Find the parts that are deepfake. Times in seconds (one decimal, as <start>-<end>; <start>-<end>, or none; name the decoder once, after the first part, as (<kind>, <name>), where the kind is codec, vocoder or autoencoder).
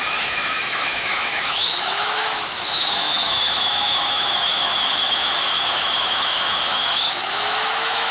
0.0-8.1 (autoencoder, DAC-VAE)